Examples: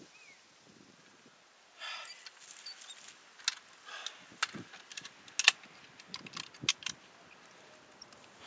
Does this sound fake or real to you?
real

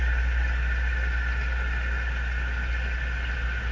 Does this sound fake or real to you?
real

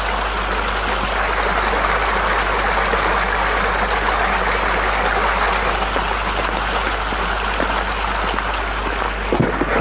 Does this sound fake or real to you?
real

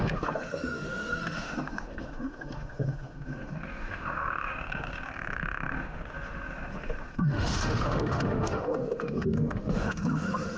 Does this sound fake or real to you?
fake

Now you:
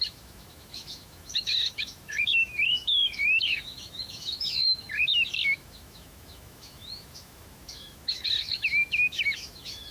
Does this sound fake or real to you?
fake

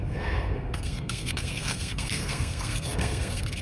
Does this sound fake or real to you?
fake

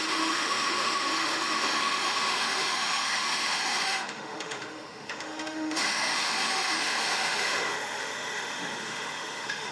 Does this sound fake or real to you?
fake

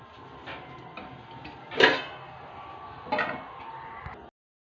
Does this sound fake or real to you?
real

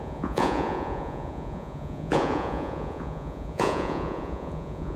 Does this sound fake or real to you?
fake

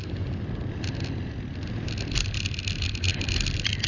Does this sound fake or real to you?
real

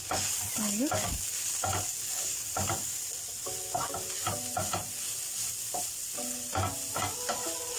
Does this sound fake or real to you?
real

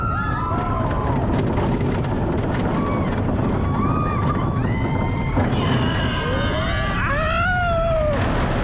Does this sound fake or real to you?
real